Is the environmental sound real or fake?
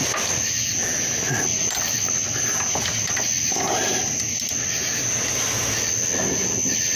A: real